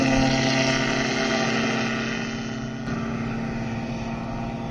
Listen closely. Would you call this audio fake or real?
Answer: real